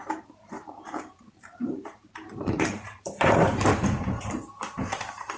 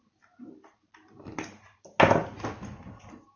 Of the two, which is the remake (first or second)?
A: first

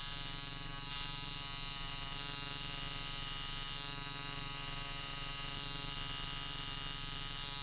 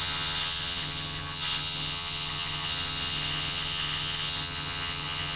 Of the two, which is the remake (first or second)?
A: second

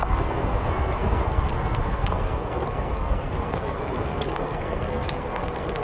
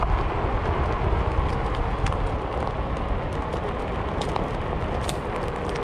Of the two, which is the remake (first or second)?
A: first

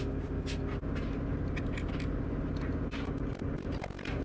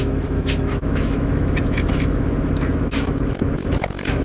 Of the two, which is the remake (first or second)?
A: second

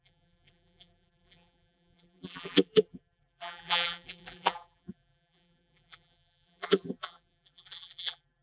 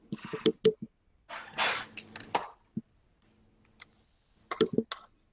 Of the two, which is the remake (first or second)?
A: first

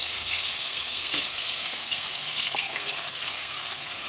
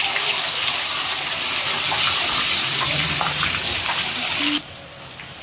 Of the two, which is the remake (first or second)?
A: first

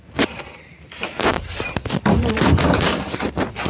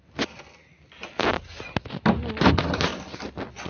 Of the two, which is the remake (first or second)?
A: first